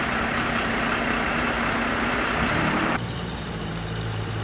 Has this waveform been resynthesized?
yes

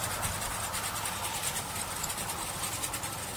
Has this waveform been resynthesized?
no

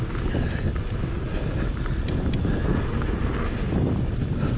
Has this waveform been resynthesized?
no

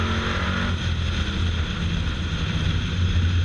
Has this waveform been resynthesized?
no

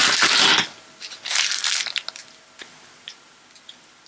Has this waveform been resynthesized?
no